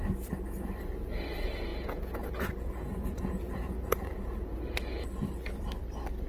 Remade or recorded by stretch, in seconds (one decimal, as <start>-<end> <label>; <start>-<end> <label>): 0.0-1.7 recorded; 1.7-4.6 remade; 4.6-6.3 recorded

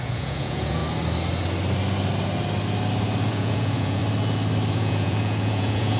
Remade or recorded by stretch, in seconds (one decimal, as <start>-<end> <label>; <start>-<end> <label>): 0.0-0.8 remade; 0.8-3.3 recorded; 3.3-4.0 remade; 4.0-4.7 recorded; 4.7-6.0 remade

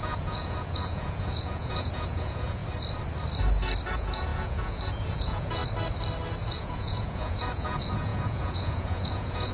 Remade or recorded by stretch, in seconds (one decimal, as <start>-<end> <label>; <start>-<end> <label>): 0.0-2.6 remade; 2.6-3.9 recorded; 3.9-5.6 remade; 5.6-6.5 recorded; 6.5-9.5 remade

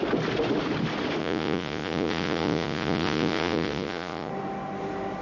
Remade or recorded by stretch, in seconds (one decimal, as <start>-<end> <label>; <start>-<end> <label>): 0.0-1.2 recorded; 1.2-4.3 remade; 4.3-5.2 recorded

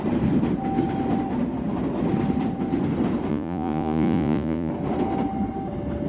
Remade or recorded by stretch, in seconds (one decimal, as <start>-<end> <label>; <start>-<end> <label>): 0.0-3.3 recorded; 3.3-4.7 remade; 4.7-6.1 recorded

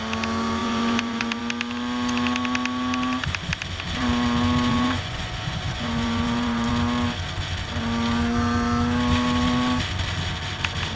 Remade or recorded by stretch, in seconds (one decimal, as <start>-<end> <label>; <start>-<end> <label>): 0.0-0.6 recorded; 0.6-1.4 remade; 1.4-4.7 recorded; 4.7-6.7 remade; 6.7-11.0 recorded